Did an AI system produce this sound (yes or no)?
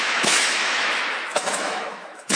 yes